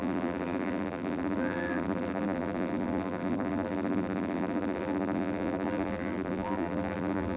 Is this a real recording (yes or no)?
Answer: no